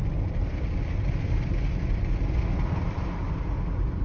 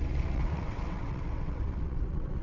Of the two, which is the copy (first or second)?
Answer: second